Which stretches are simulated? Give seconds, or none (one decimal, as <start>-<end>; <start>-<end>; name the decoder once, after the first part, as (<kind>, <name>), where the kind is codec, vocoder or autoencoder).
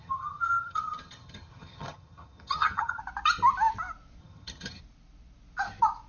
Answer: 0.0-3.0 (vocoder, HiFi-GAN); 4.2-4.8